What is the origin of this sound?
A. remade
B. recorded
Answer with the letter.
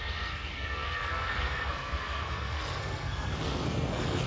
A